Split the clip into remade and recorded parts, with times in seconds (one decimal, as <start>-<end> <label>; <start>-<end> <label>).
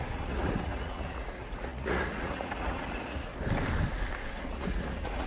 0.0-3.3 remade; 3.3-4.4 recorded; 4.4-5.3 remade